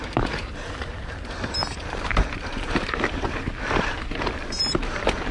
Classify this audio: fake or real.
fake